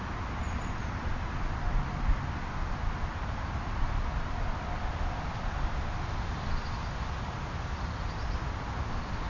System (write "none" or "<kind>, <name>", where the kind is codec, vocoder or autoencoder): none